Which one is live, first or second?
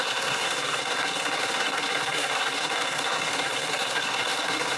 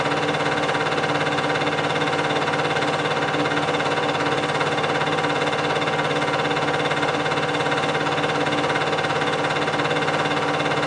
second